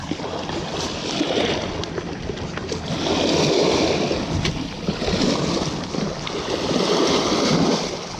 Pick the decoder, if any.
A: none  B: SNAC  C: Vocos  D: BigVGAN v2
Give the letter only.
A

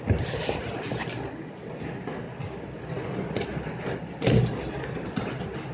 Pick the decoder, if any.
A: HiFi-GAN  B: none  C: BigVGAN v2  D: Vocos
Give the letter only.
B